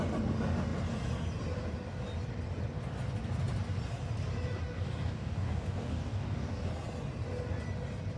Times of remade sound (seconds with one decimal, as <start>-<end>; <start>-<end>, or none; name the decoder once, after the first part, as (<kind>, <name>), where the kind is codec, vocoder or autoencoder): 4.6-6.7 (codec, DAC)